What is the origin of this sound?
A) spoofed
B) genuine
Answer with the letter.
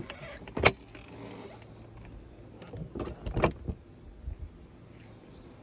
B